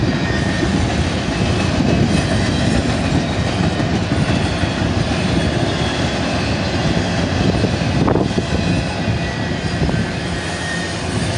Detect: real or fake real